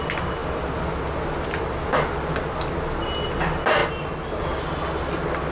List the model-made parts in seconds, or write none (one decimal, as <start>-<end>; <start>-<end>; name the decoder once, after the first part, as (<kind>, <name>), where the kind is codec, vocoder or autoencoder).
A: none